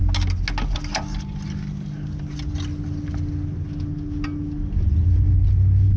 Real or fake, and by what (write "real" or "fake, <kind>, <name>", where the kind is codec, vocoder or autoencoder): real